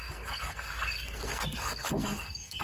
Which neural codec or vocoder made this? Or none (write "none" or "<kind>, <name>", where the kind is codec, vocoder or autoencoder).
codec, SNAC